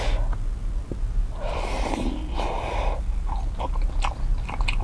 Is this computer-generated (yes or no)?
no